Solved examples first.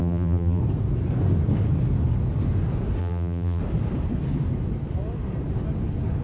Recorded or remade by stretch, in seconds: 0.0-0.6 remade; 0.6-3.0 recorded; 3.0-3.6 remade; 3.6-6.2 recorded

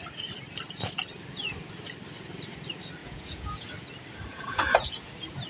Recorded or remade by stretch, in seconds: 0.0-3.0 recorded; 3.0-3.7 remade; 3.7-4.3 recorded; 4.3-5.1 remade; 5.1-5.5 recorded

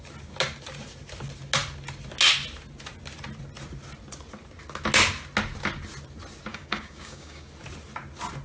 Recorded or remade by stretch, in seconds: 0.0-6.5 recorded; 6.5-7.5 remade; 7.5-8.4 recorded

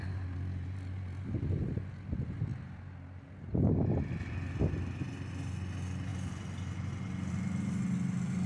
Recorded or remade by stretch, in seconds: 0.0-8.5 recorded

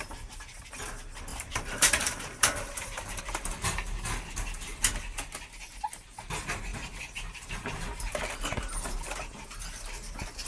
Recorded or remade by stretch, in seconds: 0.0-1.3 recorded; 1.3-3.2 remade; 3.2-6.7 recorded; 6.7-8.2 remade; 8.2-10.5 recorded